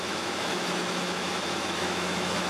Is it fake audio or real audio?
fake